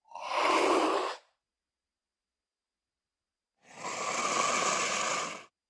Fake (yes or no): no